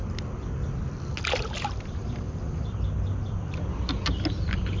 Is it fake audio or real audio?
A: real